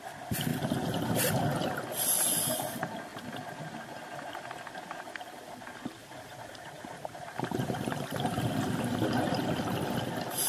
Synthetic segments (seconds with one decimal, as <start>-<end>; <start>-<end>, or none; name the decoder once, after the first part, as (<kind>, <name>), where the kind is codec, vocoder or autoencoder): 0.5-1.3 (vocoder, BigVGAN v2); 6.0-8.4